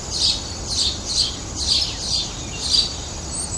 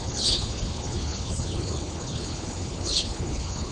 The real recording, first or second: first